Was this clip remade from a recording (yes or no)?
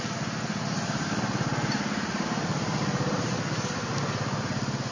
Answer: no